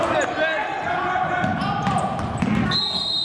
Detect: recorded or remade recorded